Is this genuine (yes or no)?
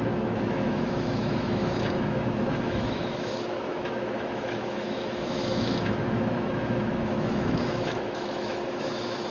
no